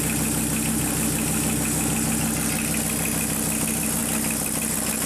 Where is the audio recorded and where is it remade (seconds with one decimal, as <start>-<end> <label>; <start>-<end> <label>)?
0.0-5.1 recorded